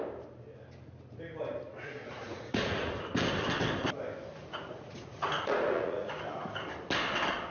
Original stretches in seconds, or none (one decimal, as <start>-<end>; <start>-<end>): 0.0-2.0; 2.9-4.4; 6.1-7.5